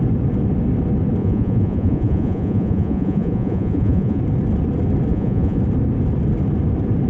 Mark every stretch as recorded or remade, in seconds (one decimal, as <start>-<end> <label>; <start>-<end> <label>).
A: 0.0-1.2 recorded; 1.2-4.2 remade; 4.2-5.1 recorded; 5.1-5.6 remade; 5.6-7.1 recorded